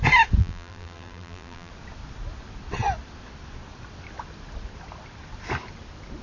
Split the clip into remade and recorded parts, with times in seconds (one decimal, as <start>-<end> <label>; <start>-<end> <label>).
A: 0.0-0.4 recorded; 0.4-1.7 remade; 1.7-6.2 recorded